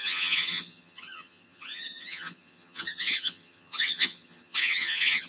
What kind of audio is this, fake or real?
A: fake